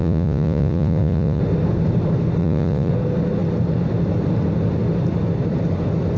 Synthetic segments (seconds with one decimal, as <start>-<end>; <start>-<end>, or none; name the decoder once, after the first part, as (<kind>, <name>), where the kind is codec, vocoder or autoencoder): 0.0-1.4 (vocoder, Vocos); 2.4-2.9